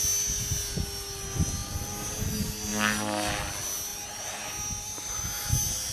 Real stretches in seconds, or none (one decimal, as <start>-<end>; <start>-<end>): 0.0-1.6; 2.2-3.9; 5.2-5.9

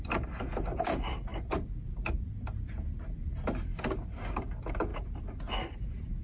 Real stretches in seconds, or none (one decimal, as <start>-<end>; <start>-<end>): 0.0-6.2

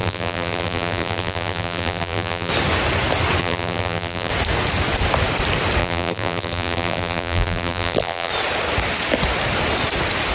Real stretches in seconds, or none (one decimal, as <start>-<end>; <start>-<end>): 2.5-3.4; 4.3-5.8; 8.3-10.3

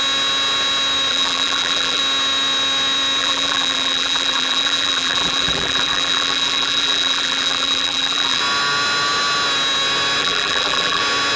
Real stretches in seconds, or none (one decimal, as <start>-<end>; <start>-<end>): 0.0-1.1; 2.0-3.2; 8.4-10.2; 11.0-11.4

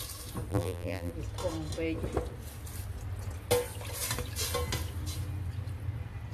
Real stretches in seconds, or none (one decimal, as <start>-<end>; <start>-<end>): 0.0-0.5; 1.1-6.3

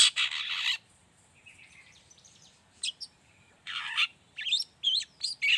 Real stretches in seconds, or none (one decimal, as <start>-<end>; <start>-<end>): 0.0-1.0; 4.4-5.6

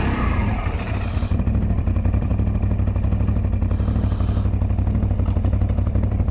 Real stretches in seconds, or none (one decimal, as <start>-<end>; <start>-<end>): 0.4-1.1; 2.3-5.4

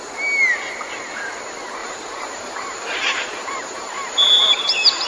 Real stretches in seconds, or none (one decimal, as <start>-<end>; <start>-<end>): 0.0-1.8; 4.6-5.1